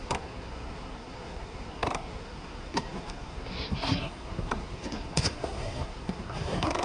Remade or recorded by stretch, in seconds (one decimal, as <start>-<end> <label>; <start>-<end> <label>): 0.0-6.8 remade